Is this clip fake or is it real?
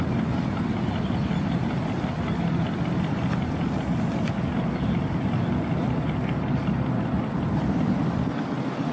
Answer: real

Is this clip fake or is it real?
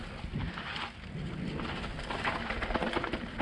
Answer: real